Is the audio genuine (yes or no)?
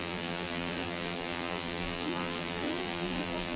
no